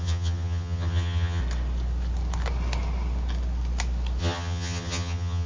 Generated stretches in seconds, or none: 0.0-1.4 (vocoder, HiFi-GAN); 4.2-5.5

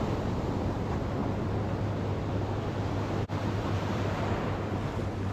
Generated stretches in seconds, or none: 3.3-4.1 (vocoder, BigVGAN v2)

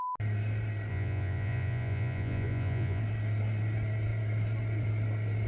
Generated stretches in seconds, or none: 0.9-3.0 (vocoder, Vocos)

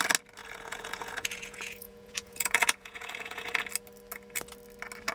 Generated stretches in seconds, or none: 0.4-3.5 (vocoder, Vocos)